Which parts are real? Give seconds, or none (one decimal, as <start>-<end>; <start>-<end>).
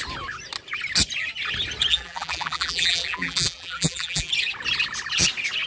0.0-1.9; 4.3-5.7